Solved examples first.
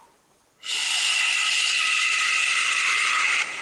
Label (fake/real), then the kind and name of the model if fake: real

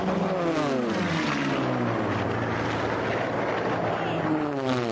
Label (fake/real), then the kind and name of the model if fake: real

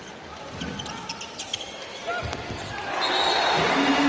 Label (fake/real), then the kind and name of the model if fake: real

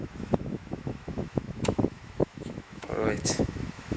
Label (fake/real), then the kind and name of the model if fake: fake, autoencoder, DAC-VAE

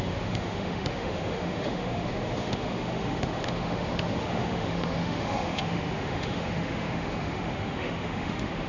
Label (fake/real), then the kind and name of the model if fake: fake, autoencoder, DAC-VAE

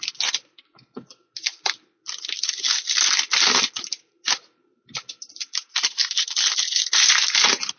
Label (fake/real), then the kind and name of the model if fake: real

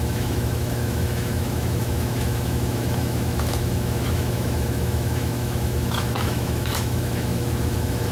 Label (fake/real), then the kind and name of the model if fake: fake, autoencoder, DAC-VAE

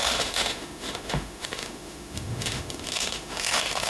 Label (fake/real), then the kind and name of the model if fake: fake, autoencoder, DAC-VAE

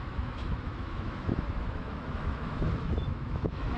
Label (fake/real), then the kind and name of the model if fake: fake, autoencoder, DAC-VAE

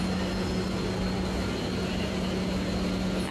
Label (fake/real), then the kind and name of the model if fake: real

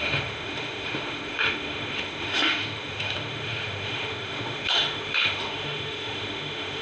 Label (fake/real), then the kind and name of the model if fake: fake, autoencoder, DAC-VAE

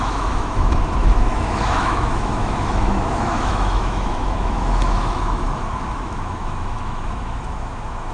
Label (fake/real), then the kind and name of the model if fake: fake, autoencoder, DAC-VAE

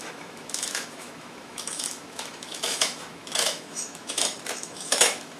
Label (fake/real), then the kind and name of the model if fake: fake, autoencoder, DAC-VAE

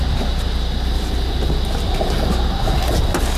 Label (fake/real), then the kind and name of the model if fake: real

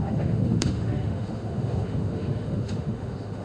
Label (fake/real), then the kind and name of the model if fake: fake, autoencoder, DAC-VAE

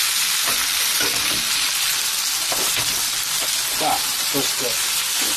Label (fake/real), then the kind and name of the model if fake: real